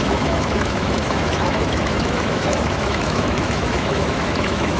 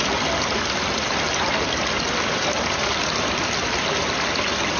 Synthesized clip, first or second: first